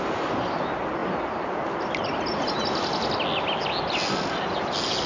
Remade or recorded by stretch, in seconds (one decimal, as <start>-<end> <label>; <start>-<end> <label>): 0.0-5.1 recorded